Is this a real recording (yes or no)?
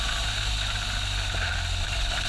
yes